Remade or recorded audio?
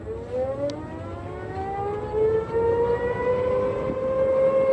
recorded